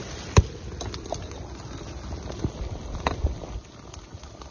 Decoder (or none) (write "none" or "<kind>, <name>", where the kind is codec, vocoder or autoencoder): none